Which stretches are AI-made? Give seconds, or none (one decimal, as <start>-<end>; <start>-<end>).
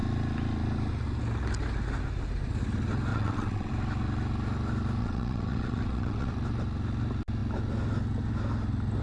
3.1-3.7; 5.0-6.3